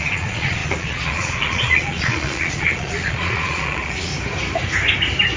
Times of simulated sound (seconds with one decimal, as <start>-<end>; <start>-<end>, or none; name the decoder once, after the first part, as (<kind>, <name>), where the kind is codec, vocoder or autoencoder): 0.0-4.1 (vocoder, Vocos)

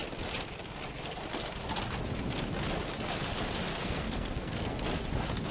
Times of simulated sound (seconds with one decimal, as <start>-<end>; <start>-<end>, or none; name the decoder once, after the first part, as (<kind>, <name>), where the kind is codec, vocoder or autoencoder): 3.7-4.8 (codec, SNAC)

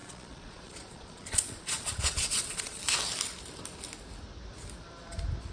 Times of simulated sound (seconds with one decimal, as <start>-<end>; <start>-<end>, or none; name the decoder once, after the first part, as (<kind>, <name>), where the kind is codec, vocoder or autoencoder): 0.0-2.8 (vocoder, Vocos)

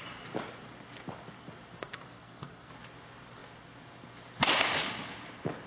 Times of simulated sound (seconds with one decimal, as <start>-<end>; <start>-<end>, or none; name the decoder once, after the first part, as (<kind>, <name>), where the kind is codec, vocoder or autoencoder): 1.8-2.7 (codec, SNAC)

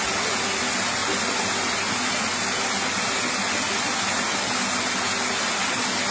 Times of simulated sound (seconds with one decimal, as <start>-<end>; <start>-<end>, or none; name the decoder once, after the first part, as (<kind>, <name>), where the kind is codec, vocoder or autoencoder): none